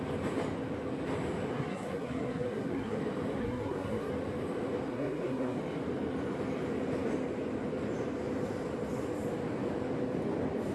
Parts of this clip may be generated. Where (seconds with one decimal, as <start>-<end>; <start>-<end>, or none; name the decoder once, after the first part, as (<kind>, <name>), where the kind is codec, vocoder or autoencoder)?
1.5-3.0 (codec, SNAC); 3.4-4.1; 4.9-5.6